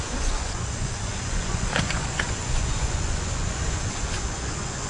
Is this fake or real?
fake